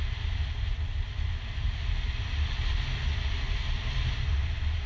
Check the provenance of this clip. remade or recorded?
recorded